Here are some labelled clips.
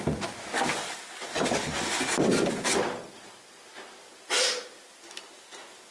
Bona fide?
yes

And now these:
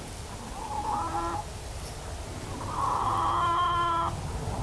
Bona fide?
yes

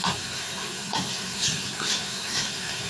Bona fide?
no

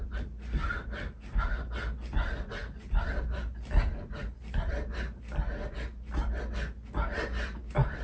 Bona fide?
yes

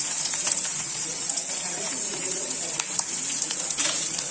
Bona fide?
no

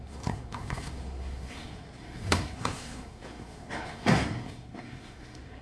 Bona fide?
no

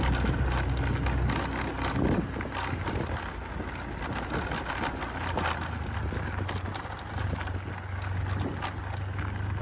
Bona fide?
yes